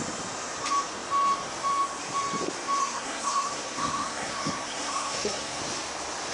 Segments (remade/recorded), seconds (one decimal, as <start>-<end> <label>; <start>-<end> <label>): 0.0-2.8 recorded; 2.8-5.6 remade; 5.6-6.3 recorded